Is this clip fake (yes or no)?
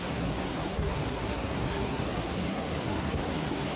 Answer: yes